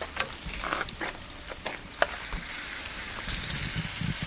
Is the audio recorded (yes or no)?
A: yes